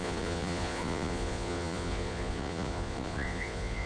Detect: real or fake fake